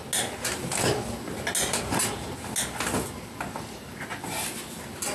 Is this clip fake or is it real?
real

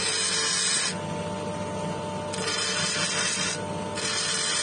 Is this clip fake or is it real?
real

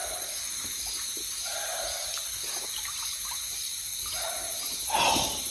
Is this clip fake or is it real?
real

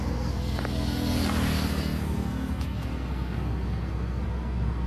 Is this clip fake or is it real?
fake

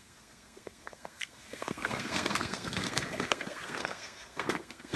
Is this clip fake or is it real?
fake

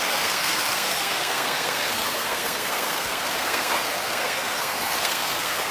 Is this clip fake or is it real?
fake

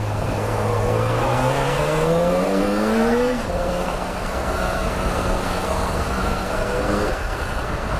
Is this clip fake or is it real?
fake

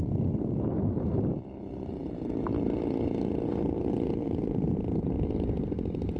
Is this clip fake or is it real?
real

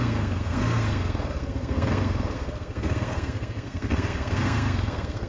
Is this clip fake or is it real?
fake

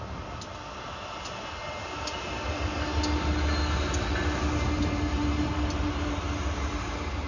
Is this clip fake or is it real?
real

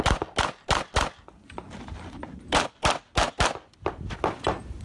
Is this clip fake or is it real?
real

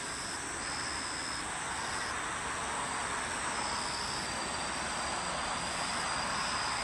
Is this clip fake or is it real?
real